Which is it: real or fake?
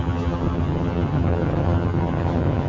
fake